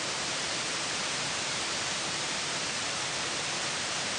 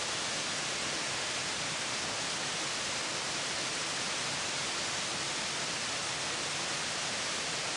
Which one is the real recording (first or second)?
second